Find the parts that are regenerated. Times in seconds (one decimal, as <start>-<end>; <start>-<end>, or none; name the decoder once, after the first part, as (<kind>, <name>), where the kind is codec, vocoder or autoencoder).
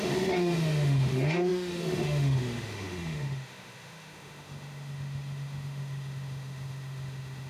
0.0-7.5 (autoencoder, DAC-VAE)